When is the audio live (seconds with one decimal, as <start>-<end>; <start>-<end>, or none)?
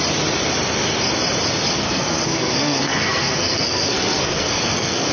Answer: 0.0-1.8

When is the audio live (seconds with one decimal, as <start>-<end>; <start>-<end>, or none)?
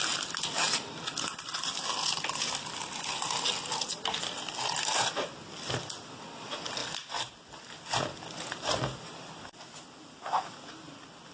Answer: 0.0-11.3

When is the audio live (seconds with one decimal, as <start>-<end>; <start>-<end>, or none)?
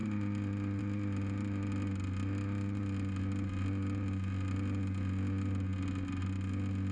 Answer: 0.0-6.9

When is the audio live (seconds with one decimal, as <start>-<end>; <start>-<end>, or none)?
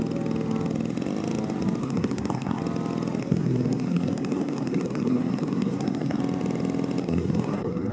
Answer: 0.0-1.8; 2.6-3.2; 6.2-7.0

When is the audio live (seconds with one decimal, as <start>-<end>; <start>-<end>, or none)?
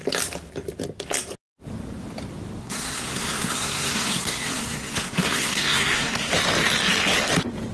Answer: 0.0-2.6; 6.3-7.7